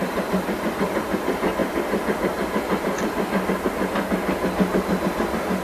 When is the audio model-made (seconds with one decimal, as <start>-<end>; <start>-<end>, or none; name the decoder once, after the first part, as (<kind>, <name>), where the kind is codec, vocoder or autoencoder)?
none